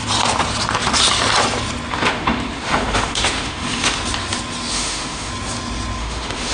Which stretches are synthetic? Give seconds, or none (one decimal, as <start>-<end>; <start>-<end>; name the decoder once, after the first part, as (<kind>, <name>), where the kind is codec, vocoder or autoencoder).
1.9-4.0 (autoencoder, DAC-VAE); 4.7-5.3; 6.0-6.5